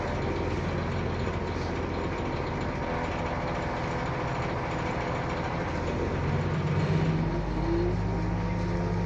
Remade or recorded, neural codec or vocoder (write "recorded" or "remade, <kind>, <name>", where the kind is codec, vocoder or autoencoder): recorded